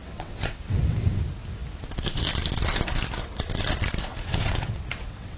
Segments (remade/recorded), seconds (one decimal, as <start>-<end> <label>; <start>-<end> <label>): 0.0-1.2 remade; 1.2-4.1 recorded; 4.1-5.4 remade